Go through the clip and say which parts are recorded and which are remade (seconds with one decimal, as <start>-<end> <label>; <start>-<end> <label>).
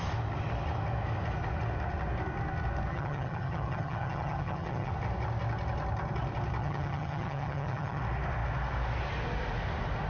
0.0-2.9 recorded; 2.9-4.9 remade; 4.9-6.6 recorded; 6.6-8.0 remade; 8.0-10.1 recorded